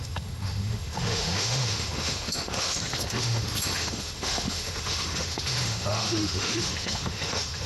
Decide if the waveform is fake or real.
fake